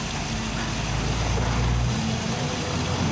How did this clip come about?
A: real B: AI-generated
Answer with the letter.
A